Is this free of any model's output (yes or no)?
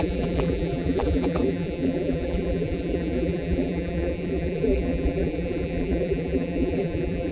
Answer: no